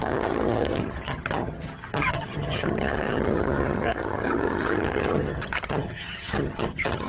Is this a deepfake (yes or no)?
yes